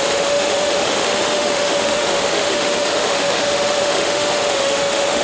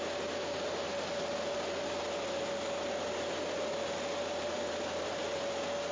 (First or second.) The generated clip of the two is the first